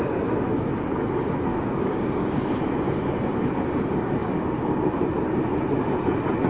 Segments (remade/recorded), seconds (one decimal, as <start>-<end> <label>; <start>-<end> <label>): 0.0-1.5 recorded; 1.5-2.4 remade; 2.4-6.5 recorded